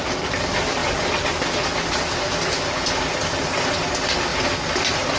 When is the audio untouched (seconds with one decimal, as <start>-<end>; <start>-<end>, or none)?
0.0-4.3